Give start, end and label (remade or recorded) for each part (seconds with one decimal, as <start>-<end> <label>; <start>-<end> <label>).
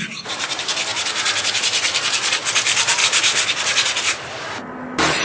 0.0-5.2 recorded